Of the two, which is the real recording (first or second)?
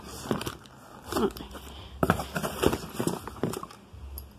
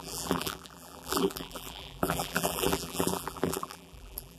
first